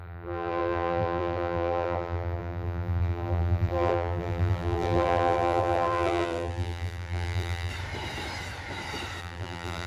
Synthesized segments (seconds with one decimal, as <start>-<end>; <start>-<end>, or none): 0.0-7.7; 9.2-9.9